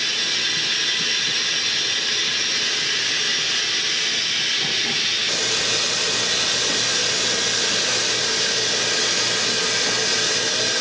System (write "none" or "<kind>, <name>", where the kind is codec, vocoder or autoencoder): none